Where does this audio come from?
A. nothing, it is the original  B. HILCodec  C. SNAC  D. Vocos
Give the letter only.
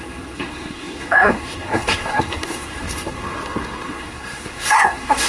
C